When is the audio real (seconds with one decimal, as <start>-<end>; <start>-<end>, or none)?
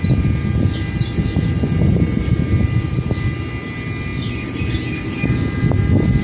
0.0-6.2